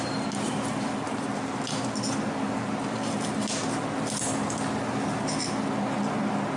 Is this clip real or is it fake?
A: real